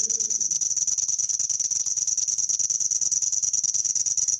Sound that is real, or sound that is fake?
real